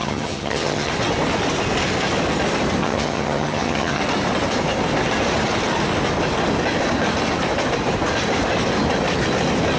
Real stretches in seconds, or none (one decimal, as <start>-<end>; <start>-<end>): 0.9-2.8; 4.0-9.8